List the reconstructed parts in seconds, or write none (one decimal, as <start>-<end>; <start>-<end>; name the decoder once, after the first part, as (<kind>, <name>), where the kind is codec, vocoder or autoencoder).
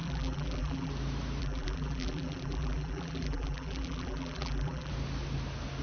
0.0-0.9 (vocoder, BigVGAN v2); 1.4-4.9